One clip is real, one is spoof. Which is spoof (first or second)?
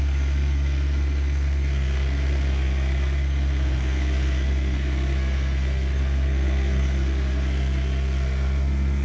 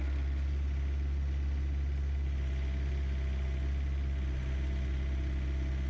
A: first